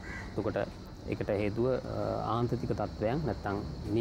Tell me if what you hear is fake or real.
real